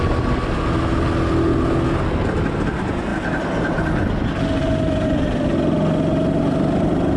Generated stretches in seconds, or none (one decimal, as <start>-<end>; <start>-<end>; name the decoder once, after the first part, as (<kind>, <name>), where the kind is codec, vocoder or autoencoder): none